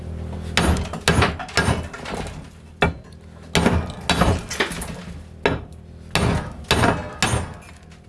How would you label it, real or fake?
real